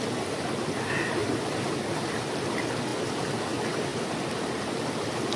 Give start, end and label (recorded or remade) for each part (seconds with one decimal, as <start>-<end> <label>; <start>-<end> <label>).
0.0-5.4 recorded

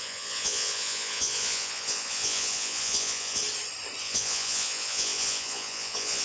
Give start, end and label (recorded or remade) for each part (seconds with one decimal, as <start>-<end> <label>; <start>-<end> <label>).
0.0-3.4 remade; 3.4-4.0 recorded; 4.0-6.2 remade

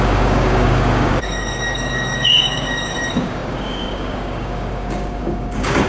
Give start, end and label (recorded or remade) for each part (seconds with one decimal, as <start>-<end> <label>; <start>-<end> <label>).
0.0-5.9 remade

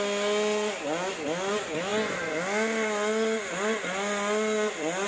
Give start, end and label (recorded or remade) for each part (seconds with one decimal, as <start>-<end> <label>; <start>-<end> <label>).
0.0-5.1 recorded

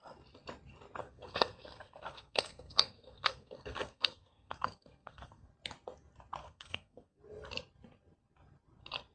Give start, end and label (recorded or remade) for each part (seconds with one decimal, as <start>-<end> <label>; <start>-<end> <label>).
0.0-1.0 recorded; 1.0-5.5 remade; 5.5-6.4 recorded; 6.4-7.2 remade; 7.2-9.1 recorded

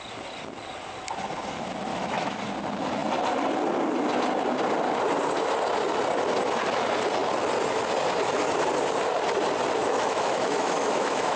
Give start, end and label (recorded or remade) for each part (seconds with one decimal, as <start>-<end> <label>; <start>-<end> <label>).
0.0-1.9 recorded; 1.9-2.4 remade; 2.4-9.8 recorded; 9.8-11.4 remade

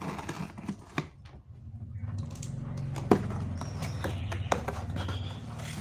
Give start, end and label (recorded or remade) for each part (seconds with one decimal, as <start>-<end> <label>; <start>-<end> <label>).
0.0-0.9 recorded; 0.9-1.9 remade; 1.9-3.8 recorded; 3.8-4.6 remade; 4.6-5.8 recorded

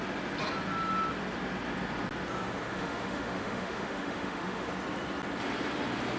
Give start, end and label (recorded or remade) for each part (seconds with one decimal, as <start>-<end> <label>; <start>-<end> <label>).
0.0-2.7 recorded; 2.7-4.7 remade; 4.7-6.2 recorded